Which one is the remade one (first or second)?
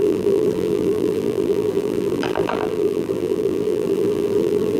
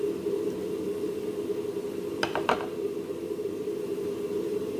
first